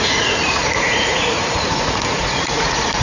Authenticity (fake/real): fake